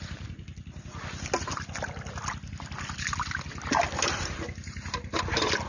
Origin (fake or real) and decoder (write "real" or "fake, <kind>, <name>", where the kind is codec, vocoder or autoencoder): real